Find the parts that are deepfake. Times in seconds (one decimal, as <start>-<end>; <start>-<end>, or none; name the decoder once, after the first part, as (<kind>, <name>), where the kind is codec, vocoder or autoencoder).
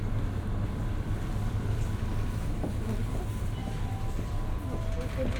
3.6-4.1 (vocoder, BigVGAN v2)